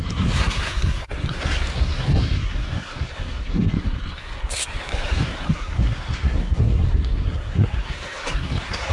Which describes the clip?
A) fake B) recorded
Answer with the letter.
A